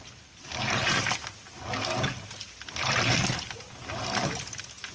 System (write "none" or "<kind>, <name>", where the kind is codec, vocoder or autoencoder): none